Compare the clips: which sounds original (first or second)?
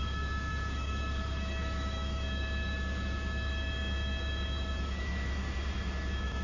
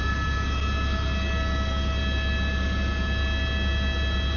second